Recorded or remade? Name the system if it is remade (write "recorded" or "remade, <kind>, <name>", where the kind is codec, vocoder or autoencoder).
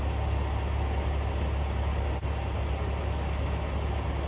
recorded